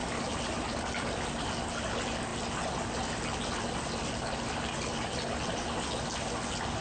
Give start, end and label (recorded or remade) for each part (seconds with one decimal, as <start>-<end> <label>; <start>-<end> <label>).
0.0-6.8 recorded